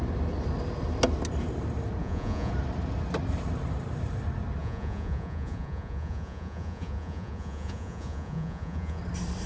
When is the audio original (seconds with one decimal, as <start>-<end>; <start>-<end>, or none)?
0.0-2.0; 2.5-4.6; 9.0-9.5